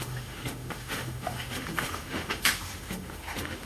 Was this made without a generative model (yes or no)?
no